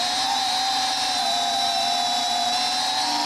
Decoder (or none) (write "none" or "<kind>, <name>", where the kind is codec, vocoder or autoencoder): vocoder, BigVGAN v2